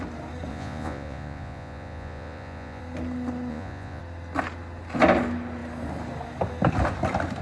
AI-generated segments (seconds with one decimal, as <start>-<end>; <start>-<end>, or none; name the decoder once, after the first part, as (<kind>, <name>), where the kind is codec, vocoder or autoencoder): 0.5-2.8 (vocoder, Vocos); 3.5-4.0